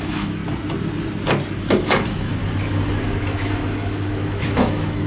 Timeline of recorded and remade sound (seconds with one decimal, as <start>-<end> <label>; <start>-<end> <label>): 0.0-0.4 remade; 0.4-1.6 recorded; 1.6-2.4 remade; 2.4-3.2 recorded; 3.2-5.1 remade